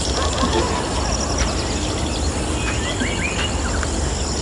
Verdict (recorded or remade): recorded